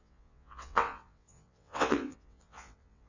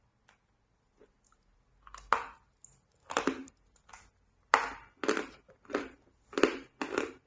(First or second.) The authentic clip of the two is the second